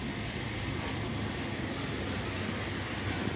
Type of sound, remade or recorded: recorded